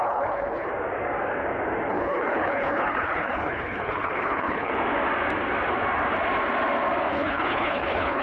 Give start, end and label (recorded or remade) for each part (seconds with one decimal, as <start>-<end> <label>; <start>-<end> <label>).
0.0-0.7 remade; 0.7-1.9 recorded; 1.9-4.7 remade; 4.7-7.1 recorded; 7.1-8.2 remade